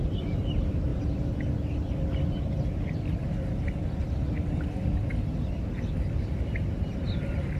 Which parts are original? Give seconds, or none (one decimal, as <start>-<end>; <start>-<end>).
0.0-0.9; 1.4-7.6